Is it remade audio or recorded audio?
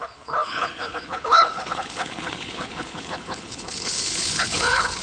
remade